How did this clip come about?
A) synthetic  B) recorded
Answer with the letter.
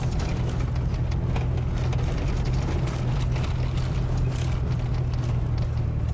B